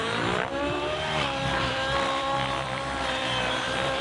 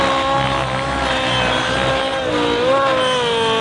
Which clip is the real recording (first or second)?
second